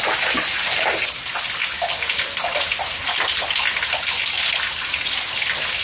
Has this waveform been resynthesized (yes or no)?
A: no